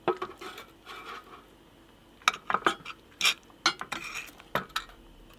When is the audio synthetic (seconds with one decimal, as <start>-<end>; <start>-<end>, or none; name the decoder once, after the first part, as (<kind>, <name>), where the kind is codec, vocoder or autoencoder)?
none